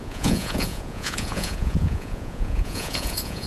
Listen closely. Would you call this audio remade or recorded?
remade